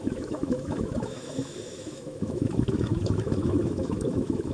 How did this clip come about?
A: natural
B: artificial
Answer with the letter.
B